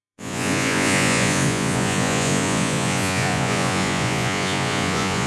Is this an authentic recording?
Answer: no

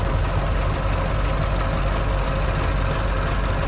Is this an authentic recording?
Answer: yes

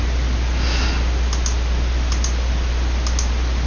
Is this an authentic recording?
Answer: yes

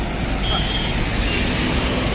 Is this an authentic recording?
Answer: yes